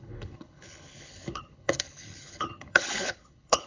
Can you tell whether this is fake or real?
fake